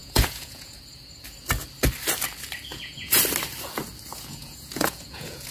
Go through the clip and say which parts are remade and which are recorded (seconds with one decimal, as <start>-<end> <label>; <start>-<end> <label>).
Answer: 0.0-0.8 remade; 0.8-2.7 recorded; 2.7-3.2 remade; 3.2-4.1 recorded; 4.1-5.5 remade